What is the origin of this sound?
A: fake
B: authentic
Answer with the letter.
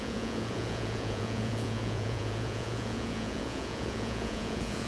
A